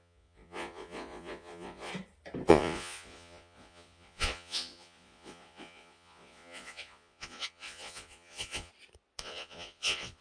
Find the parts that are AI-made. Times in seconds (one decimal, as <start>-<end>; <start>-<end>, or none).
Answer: 0.0-1.9; 2.5-8.7; 9.2-10.2